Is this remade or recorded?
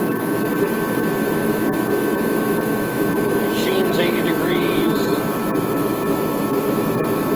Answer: remade